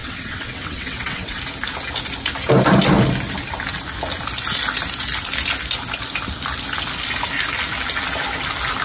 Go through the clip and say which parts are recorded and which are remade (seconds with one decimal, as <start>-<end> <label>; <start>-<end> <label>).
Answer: 0.0-1.4 remade; 1.4-8.8 recorded